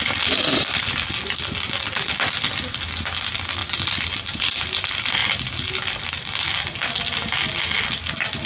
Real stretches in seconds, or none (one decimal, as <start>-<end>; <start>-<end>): 0.0-3.6; 4.8-8.5